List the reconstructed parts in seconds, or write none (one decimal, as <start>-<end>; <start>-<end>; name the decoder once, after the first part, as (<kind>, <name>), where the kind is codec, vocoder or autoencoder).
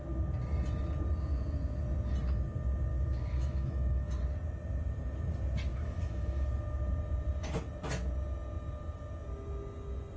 2.9-4.1 (autoencoder, DAC-VAE); 5.7-6.5